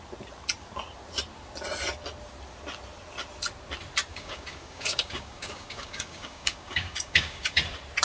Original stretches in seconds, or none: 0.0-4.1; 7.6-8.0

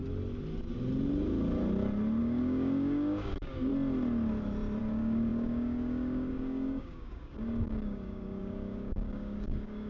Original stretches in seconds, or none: 0.0-2.2; 3.7-4.8